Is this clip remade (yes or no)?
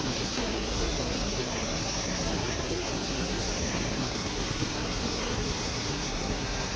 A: yes